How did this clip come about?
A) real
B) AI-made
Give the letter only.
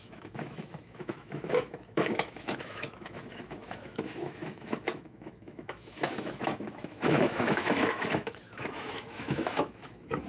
B